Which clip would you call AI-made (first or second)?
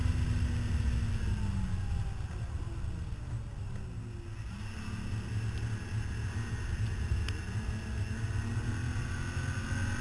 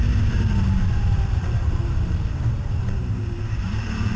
second